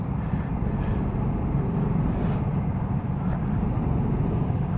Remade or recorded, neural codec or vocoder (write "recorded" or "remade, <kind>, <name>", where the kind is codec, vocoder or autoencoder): remade, vocoder, BigVGAN v2